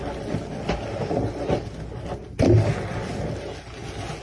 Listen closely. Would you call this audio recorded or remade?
recorded